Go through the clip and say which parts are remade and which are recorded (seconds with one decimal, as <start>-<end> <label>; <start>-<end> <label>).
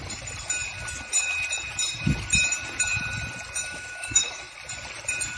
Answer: 0.0-3.6 recorded; 3.6-4.5 remade; 4.5-5.4 recorded